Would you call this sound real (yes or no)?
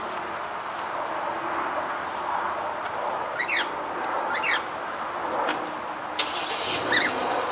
yes